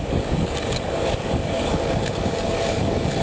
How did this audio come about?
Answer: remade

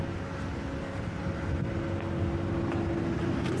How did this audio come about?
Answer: recorded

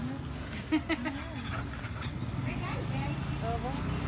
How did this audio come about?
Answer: recorded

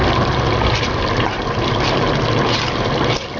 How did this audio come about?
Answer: recorded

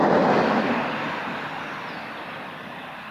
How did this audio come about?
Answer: recorded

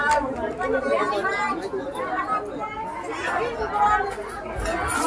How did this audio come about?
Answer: recorded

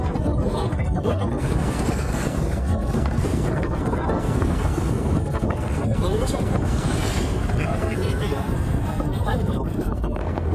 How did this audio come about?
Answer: remade